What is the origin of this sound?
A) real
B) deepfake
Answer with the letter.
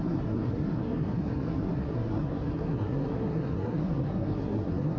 B